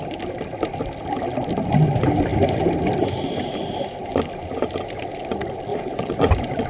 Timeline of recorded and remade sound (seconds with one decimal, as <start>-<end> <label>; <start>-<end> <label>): 0.0-5.7 recorded; 5.7-6.3 remade; 6.3-6.7 recorded